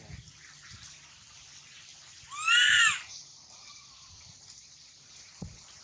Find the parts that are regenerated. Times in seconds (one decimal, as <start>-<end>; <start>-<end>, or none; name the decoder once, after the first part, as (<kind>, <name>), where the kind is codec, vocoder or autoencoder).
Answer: none